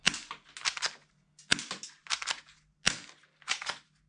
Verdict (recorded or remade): recorded